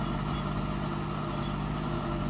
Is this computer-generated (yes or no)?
no